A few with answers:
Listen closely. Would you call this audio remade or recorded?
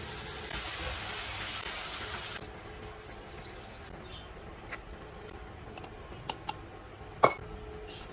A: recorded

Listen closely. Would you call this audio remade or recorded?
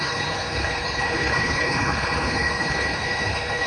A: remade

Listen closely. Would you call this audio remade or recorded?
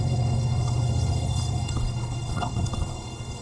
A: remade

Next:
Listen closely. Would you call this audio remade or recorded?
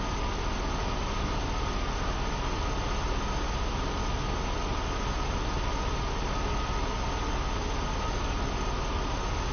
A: recorded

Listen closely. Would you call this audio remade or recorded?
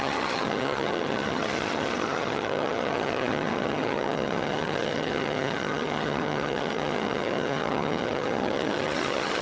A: remade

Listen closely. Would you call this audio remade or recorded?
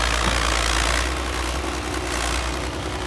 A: recorded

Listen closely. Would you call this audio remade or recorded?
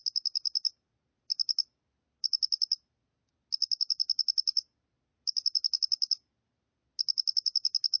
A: recorded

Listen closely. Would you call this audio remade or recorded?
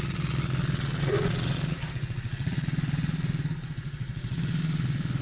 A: remade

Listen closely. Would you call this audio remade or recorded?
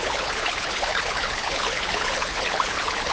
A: remade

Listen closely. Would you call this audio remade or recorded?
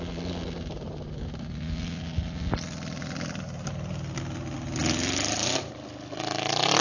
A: recorded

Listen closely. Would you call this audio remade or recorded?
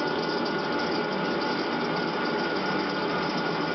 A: recorded